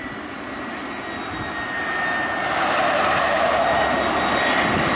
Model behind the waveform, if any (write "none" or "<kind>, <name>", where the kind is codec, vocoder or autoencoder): none